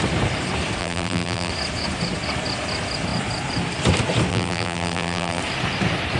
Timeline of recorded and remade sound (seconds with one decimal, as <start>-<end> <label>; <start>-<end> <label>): 0.0-0.8 recorded; 0.8-1.5 remade; 1.5-4.3 recorded; 4.3-5.4 remade; 5.4-6.2 recorded